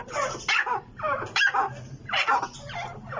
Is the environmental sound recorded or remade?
remade